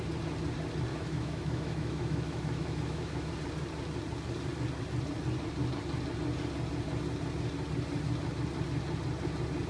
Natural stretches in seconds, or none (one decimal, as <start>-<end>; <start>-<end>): 0.0-0.9; 3.3-9.7